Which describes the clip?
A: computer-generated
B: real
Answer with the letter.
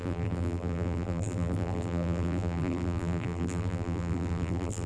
A